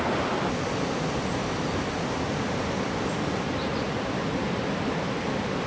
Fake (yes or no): no